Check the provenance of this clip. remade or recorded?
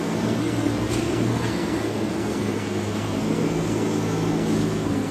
remade